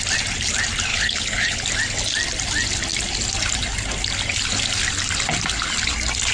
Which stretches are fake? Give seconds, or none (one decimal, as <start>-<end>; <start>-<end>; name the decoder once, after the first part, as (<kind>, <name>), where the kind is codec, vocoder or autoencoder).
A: 0.9-1.6 (codec, HILCodec)